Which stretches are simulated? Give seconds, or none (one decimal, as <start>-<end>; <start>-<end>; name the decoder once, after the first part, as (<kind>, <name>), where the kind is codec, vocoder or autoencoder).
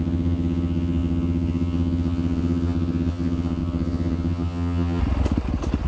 0.0-5.0 (vocoder, HiFi-GAN)